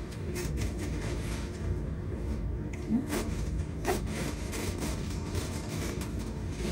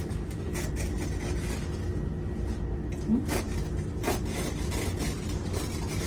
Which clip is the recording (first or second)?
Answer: second